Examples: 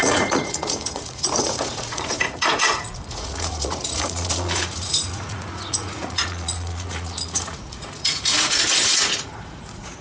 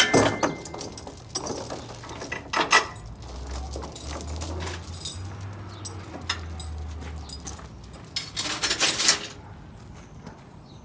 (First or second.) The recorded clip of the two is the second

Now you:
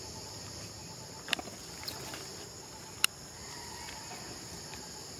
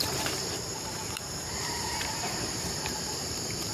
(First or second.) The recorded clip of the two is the first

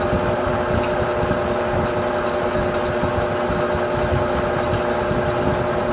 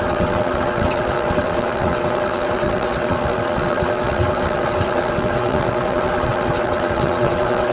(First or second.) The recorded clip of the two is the first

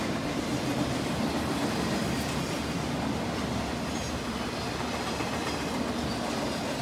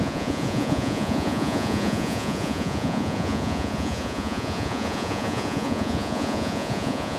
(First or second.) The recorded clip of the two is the first